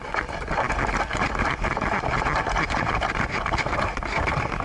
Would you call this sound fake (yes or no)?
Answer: no